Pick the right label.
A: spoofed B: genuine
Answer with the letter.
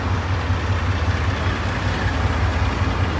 B